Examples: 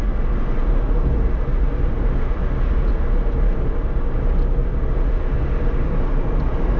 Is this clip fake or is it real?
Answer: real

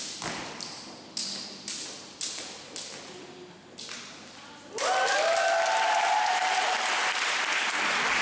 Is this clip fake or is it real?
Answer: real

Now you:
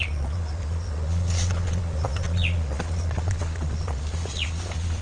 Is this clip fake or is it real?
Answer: fake